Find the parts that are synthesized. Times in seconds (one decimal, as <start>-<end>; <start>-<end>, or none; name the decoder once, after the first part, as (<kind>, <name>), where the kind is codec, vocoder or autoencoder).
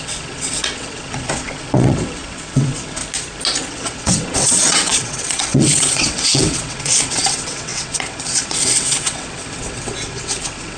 0.0-3.0 (vocoder, WaveNeXt); 3.7-10.8